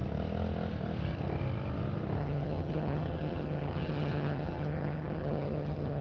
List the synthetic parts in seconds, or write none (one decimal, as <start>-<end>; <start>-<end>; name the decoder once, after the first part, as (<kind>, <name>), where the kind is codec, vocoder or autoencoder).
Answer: 2.2-6.0 (vocoder, HiFi-GAN)